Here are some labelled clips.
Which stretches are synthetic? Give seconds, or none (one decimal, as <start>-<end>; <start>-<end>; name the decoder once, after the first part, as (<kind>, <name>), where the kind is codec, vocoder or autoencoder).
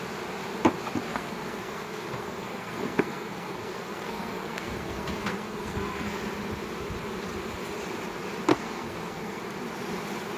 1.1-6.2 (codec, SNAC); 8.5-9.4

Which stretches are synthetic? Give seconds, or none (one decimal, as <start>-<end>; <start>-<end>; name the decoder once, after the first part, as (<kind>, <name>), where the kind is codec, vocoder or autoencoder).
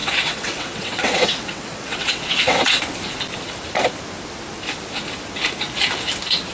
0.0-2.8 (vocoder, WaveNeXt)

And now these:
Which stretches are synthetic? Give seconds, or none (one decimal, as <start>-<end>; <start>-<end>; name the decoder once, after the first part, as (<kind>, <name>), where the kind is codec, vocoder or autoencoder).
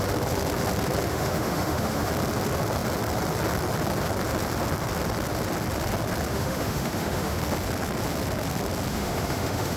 1.1-2.1 (autoencoder, DAC-VAE); 6.3-7.4; 8.9-9.8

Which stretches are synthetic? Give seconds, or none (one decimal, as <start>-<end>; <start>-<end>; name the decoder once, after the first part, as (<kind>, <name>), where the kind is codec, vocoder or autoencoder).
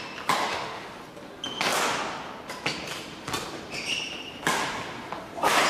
0.5-1.0 (autoencoder, DAC-VAE)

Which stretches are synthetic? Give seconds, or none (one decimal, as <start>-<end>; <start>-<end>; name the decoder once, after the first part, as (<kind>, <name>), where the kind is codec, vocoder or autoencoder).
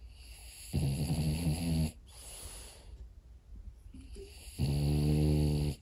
3.5-4.5 (vocoder, BigVGAN v2)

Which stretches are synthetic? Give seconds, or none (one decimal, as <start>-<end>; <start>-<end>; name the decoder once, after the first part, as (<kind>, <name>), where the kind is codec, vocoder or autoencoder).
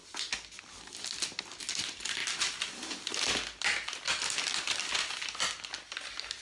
none